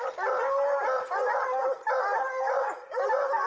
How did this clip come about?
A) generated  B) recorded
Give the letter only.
B